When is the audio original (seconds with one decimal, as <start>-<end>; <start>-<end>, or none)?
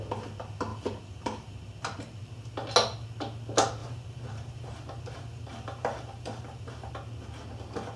0.0-0.7; 1.6-3.8; 6.9-8.0